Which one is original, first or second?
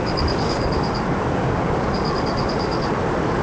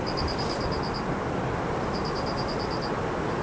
second